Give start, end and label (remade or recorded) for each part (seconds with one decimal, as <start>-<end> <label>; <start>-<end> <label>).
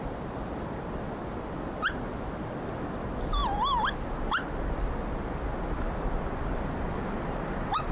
0.0-7.9 recorded